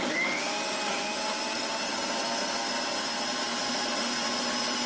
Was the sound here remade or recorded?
recorded